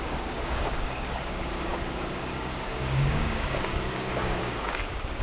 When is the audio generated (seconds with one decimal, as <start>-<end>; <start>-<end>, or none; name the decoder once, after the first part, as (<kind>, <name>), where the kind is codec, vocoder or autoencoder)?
0.0-5.2 (codec, DAC)